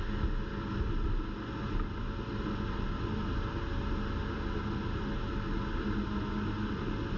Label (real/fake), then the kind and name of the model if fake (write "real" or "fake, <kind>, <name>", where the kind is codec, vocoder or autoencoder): real